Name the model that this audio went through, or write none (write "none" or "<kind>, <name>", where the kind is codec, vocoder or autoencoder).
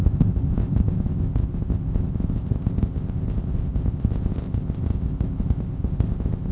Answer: codec, ZipCodec